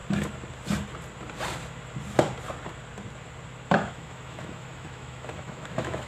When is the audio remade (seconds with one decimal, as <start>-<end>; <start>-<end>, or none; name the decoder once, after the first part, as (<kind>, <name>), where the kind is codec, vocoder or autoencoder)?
3.7-6.1 (autoencoder, DAC-VAE)